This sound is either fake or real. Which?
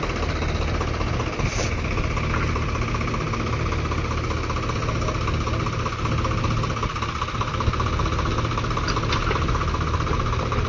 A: real